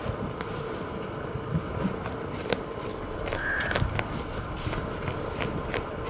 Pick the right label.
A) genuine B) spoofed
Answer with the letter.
A